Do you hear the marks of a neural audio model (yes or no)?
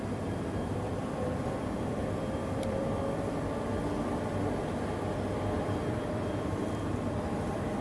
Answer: yes